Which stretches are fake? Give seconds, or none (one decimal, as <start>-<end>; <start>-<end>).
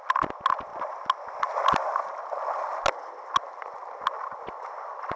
none